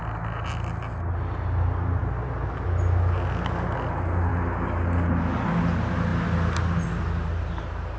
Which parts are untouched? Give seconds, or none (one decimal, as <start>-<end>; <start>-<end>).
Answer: 0.0-8.0